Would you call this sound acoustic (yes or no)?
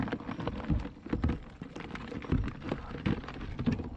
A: yes